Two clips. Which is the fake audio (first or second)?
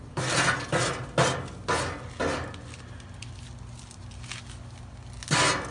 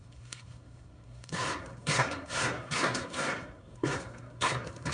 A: second